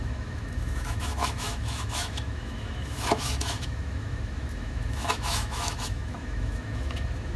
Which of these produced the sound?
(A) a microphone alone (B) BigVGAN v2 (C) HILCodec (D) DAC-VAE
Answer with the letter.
D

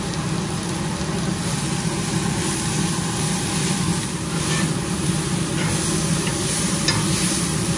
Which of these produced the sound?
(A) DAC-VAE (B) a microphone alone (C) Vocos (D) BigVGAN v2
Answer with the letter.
B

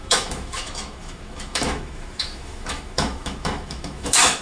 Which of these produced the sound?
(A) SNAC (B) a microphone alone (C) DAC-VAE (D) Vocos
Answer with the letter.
C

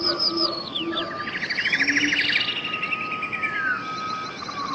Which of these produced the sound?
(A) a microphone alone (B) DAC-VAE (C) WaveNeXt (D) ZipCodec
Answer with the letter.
A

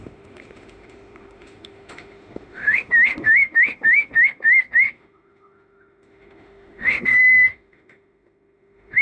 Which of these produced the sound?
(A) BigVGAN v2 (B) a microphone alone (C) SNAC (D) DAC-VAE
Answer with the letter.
D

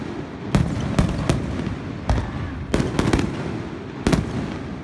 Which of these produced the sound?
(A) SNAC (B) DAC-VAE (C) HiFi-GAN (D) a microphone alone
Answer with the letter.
D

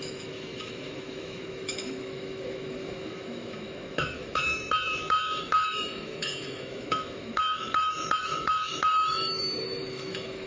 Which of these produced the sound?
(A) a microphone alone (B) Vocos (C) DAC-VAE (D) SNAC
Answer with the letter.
C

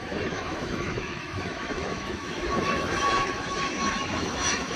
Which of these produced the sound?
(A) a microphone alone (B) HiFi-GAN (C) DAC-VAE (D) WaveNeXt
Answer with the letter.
C